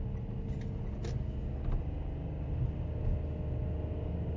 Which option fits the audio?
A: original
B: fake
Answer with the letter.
A